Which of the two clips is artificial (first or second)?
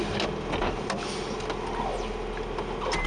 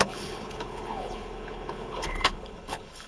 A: second